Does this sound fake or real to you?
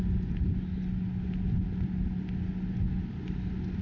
real